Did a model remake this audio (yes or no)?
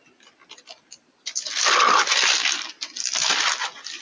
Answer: no